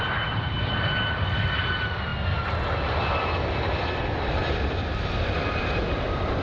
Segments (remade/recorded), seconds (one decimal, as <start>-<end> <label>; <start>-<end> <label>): 0.0-6.4 recorded